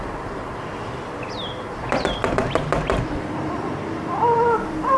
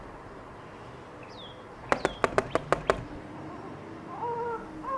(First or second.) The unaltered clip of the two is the second